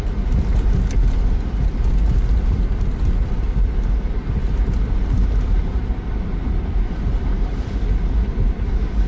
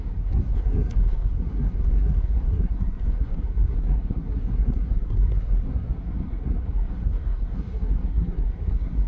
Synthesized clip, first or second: second